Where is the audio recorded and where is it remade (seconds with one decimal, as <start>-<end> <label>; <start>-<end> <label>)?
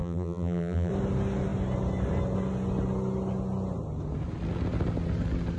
0.0-0.9 remade; 0.9-5.6 recorded